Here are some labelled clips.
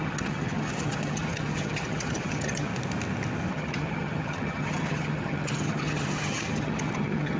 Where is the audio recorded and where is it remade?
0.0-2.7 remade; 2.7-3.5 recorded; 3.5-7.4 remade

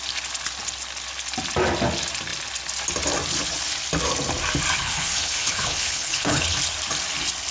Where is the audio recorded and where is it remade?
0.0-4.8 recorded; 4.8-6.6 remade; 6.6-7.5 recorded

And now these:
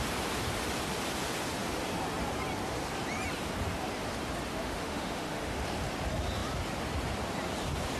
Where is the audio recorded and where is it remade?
0.0-4.5 recorded; 4.5-5.6 remade; 5.6-8.0 recorded

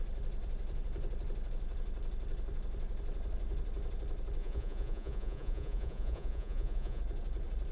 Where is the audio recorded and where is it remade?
0.0-4.4 recorded; 4.4-7.0 remade; 7.0-7.7 recorded